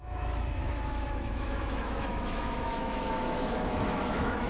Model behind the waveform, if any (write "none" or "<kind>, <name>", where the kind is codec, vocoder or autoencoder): autoencoder, DAC-VAE